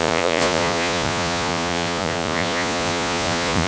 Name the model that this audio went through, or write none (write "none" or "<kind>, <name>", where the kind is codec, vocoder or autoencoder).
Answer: vocoder, Vocos